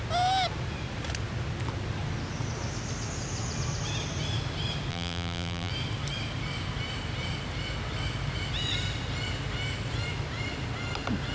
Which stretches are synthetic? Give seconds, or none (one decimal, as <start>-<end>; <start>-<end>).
4.9-5.7